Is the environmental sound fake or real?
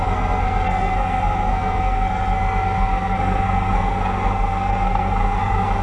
fake